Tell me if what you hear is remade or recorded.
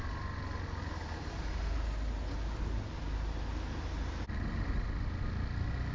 recorded